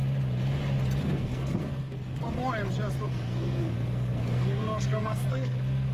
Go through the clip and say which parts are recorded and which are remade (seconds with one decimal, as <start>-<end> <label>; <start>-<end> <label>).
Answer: 0.0-1.0 recorded; 1.0-2.4 remade; 2.4-3.0 recorded; 3.0-5.9 remade